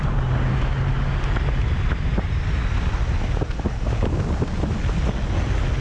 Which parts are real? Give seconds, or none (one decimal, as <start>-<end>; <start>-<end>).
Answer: 0.0-5.8

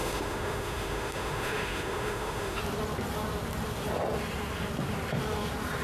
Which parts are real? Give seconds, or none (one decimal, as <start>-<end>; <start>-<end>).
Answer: 2.6-5.8

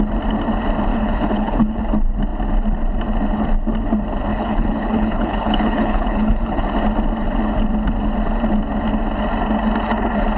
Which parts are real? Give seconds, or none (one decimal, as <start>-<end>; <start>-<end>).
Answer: 0.0-0.9; 1.8-4.3; 6.6-10.4

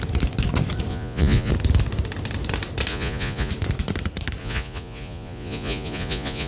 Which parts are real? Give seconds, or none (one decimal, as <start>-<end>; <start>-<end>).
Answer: 0.0-0.9; 1.5-2.9; 3.5-4.4

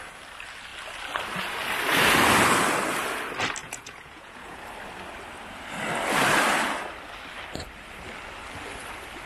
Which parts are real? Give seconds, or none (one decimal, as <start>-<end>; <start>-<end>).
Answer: 0.0-3.6; 4.6-9.3

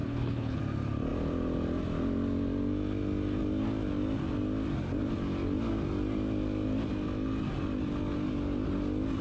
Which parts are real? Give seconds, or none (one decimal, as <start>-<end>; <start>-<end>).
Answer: 0.6-9.2

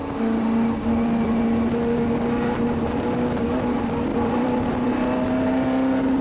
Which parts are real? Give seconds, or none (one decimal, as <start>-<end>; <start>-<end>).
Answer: 0.0-4.1; 4.9-6.2

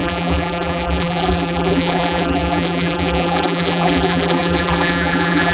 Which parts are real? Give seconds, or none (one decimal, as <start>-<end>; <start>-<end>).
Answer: none